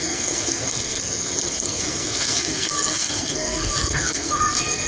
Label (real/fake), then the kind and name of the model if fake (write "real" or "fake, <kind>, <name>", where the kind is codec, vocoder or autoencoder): fake, codec, SNAC